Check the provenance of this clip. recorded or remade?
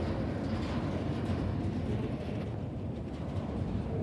recorded